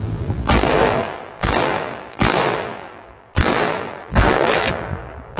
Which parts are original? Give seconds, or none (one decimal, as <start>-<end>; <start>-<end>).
none